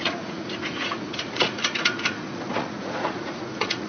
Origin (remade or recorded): remade